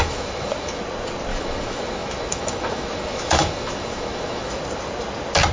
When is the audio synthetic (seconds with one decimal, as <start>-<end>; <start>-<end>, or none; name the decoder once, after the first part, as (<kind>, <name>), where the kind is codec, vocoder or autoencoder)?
0.0-0.8 (autoencoder, DAC-VAE); 1.3-4.6